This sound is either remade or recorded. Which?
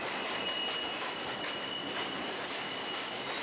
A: recorded